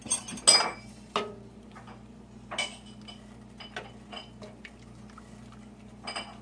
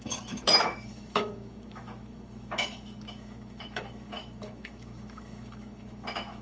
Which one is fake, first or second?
second